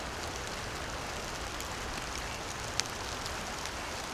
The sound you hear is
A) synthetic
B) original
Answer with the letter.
B